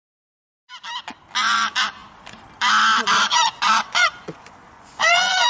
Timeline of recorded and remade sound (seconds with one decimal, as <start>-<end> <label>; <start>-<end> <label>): 0.0-3.3 recorded; 3.3-5.5 remade